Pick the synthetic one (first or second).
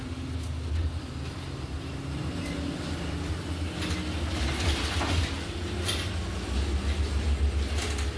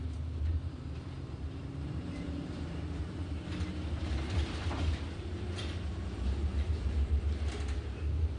second